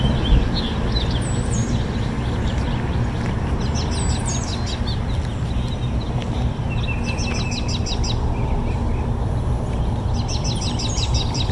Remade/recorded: recorded